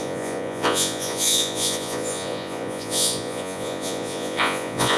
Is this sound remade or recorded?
remade